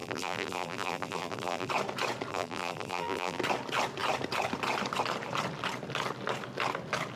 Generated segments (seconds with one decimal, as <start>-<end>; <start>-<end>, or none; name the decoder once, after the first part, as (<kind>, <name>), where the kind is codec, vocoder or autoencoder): 0.0-1.7 (vocoder, BigVGAN v2); 2.3-3.4